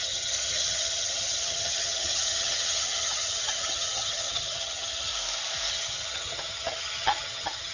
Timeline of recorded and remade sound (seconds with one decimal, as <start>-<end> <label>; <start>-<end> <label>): 0.0-5.1 remade; 5.1-5.7 recorded; 5.7-7.7 remade